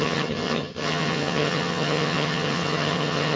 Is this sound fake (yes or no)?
yes